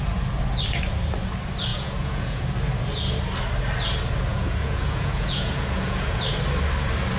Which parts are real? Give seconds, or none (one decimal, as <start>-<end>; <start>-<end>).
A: 0.0-1.7; 2.4-4.3; 6.2-7.2